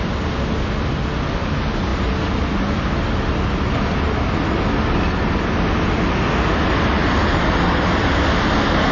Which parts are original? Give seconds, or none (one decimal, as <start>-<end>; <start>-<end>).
0.0-7.0; 8.1-8.9